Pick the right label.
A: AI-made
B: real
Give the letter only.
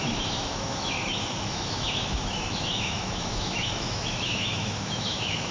A